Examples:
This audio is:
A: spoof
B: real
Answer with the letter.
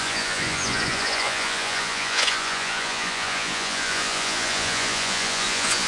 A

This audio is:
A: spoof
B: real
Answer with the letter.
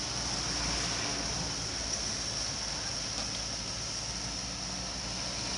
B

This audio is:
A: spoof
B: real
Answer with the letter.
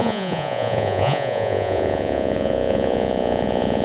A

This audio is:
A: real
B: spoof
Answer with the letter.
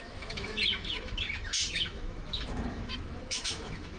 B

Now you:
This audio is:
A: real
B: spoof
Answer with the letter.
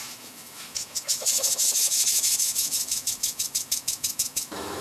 B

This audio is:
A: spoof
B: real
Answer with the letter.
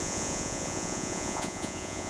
A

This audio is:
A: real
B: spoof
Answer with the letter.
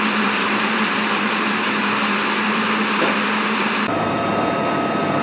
B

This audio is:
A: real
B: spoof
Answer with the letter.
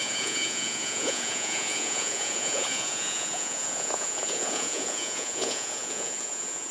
B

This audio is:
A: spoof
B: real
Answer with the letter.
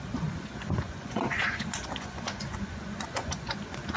A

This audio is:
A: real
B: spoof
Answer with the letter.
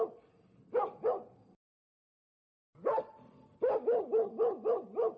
A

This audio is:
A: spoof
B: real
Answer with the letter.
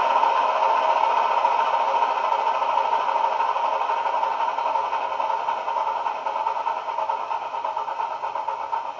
B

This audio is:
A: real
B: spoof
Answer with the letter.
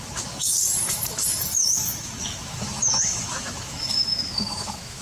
B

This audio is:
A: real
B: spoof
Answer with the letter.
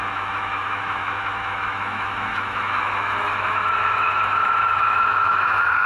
B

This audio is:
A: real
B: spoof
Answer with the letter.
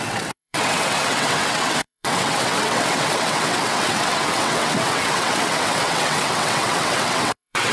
B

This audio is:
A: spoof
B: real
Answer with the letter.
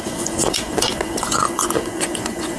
A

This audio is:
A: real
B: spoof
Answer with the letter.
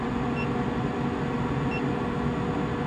A